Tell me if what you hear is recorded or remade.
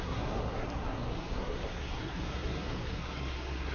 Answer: remade